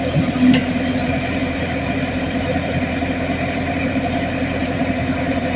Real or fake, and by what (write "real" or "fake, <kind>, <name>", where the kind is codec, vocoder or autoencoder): fake, vocoder, BigVGAN v2